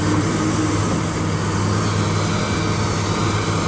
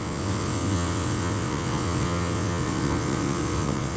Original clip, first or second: first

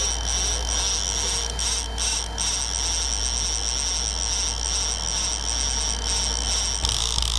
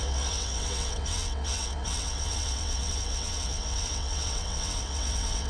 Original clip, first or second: first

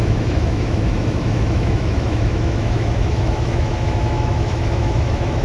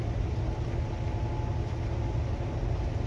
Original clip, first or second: second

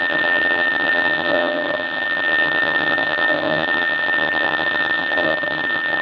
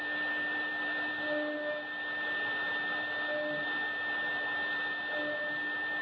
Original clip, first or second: second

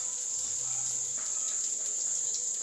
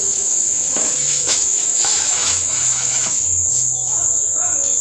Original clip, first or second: first